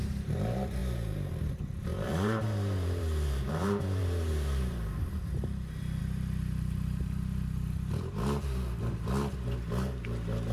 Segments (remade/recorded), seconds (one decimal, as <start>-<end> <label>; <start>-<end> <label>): 0.0-10.5 remade